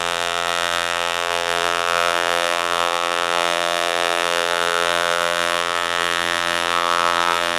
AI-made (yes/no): yes